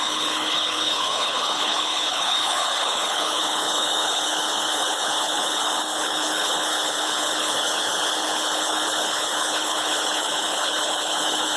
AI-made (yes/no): yes